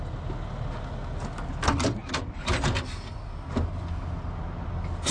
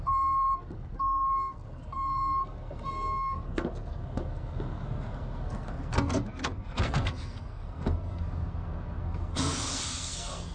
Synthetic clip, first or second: second